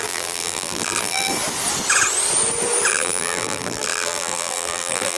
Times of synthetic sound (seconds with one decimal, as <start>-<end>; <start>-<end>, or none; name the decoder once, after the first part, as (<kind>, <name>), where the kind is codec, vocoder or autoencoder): 0.0-1.3 (vocoder, BigVGAN v2); 2.9-5.2